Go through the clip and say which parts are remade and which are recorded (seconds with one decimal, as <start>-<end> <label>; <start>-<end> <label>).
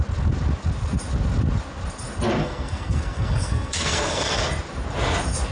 0.0-2.4 recorded; 2.4-4.4 remade; 4.4-5.5 recorded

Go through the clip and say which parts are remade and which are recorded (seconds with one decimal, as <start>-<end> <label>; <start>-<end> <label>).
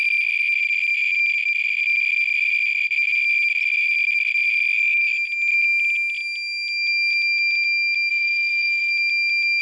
0.0-8.1 recorded; 8.1-8.9 remade; 8.9-9.6 recorded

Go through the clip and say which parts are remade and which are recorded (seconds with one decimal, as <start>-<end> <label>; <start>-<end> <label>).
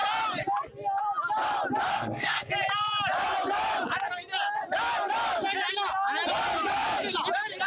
0.0-1.9 recorded; 1.9-2.5 remade; 2.5-7.7 recorded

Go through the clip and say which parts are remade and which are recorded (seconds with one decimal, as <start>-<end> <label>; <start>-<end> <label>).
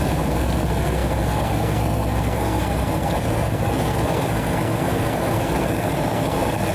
0.0-6.7 remade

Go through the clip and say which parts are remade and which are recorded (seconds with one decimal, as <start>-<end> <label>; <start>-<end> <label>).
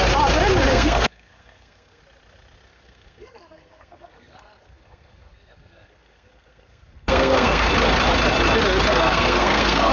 0.0-0.7 recorded; 0.7-2.0 remade; 2.0-2.7 recorded; 2.7-7.7 remade; 7.7-8.9 recorded; 8.9-9.9 remade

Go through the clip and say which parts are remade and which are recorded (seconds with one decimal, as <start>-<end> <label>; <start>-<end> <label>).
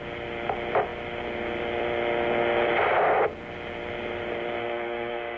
0.0-4.6 recorded; 4.6-5.4 remade